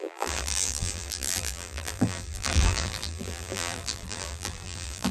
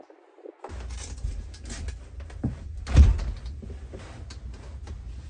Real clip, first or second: second